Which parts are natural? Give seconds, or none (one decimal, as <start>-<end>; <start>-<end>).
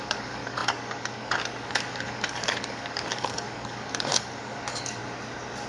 5.0-5.7